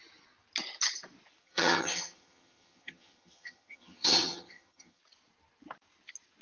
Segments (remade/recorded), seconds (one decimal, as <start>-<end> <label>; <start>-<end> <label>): 0.0-1.4 recorded; 1.4-5.0 remade; 5.0-6.4 recorded